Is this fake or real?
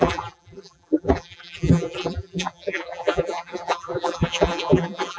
fake